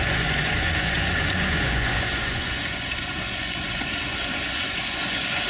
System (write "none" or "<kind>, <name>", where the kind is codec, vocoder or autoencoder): vocoder, Vocos